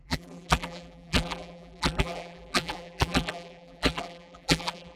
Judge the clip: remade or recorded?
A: remade